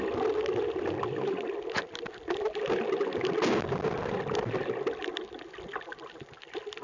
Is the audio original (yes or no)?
yes